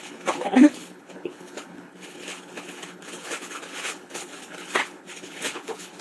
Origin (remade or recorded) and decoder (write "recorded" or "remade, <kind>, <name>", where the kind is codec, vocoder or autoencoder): remade, codec, HILCodec